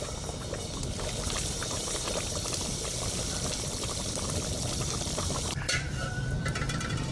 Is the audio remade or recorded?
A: remade